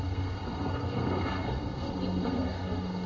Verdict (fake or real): fake